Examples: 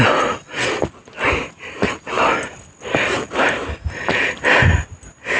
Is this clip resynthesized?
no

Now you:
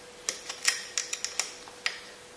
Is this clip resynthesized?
no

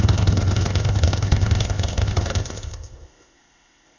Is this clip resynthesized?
yes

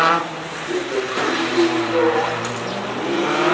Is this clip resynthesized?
yes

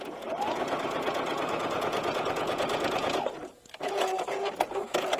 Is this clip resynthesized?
yes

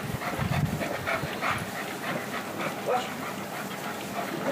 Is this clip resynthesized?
no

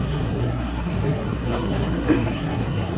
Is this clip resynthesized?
yes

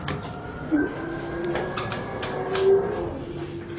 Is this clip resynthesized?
no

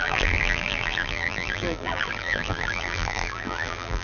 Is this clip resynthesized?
yes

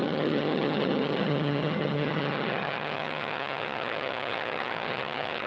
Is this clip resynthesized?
yes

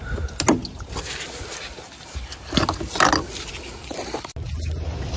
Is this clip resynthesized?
no